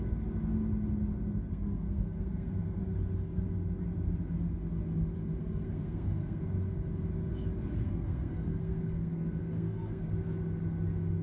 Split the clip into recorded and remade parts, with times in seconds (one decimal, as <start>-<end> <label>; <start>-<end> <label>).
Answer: 0.0-1.5 recorded; 1.5-2.8 remade; 2.8-5.4 recorded; 5.4-6.4 remade; 6.4-7.8 recorded; 7.8-10.1 remade; 10.1-11.2 recorded